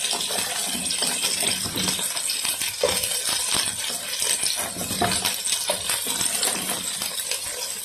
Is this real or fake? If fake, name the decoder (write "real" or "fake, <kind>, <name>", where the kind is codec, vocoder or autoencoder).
real